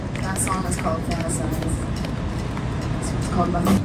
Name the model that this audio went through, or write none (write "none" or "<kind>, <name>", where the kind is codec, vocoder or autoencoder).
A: none